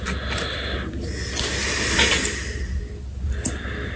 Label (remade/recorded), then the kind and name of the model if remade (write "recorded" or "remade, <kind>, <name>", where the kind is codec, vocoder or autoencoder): recorded